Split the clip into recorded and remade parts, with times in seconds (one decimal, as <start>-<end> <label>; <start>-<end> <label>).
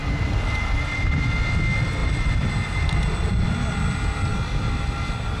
0.0-1.2 remade; 1.2-2.0 recorded; 2.0-3.3 remade; 3.3-5.4 recorded